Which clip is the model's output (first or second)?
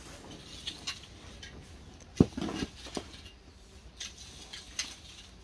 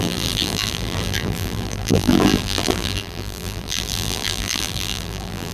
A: second